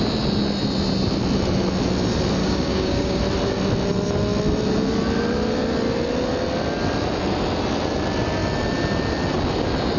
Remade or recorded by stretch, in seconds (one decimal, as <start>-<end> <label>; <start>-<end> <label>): 0.0-2.4 recorded; 2.4-3.2 remade; 3.2-10.0 recorded